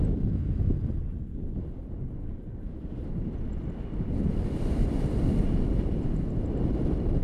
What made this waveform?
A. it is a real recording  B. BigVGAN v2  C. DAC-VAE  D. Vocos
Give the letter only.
B